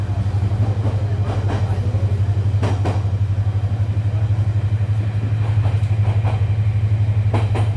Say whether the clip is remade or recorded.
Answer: recorded